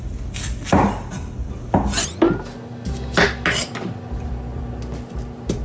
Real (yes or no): yes